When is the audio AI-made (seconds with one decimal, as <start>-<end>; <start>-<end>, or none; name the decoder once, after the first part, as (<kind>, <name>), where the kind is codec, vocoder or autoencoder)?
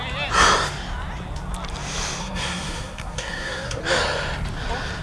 2.2-3.8 (codec, SNAC)